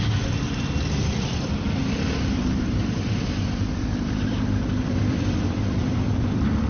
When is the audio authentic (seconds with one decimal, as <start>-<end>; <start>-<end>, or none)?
none